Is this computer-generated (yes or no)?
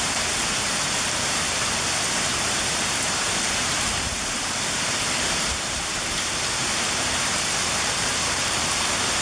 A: yes